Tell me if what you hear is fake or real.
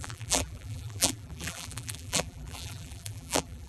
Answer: fake